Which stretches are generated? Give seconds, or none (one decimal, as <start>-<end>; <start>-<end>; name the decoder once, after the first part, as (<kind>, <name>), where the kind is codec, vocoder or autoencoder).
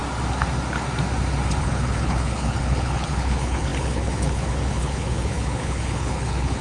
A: 1.6-6.6 (codec, HILCodec)